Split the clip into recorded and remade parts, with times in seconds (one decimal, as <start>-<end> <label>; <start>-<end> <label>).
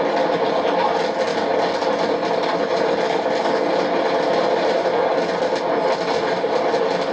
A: 0.0-7.1 recorded